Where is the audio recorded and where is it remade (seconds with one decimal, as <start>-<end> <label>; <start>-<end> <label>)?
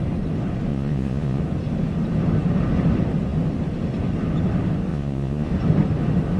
0.0-0.7 recorded; 0.7-1.4 remade; 1.4-4.9 recorded; 4.9-5.5 remade; 5.5-6.4 recorded